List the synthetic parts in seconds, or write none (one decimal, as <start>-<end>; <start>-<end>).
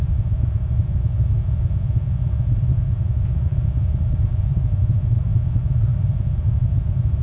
0.0-1.1; 2.6-3.5; 4.5-5.3; 6.4-7.2